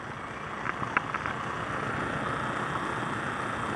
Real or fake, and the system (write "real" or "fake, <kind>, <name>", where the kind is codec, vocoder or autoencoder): real